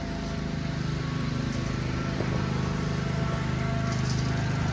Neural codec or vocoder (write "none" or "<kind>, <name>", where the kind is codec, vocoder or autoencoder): none